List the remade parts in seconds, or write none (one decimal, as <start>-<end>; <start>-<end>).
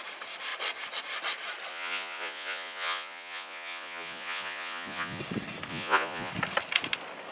1.7-5.2; 5.7-6.3